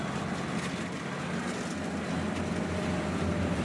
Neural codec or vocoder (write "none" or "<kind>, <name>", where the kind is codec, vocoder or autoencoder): none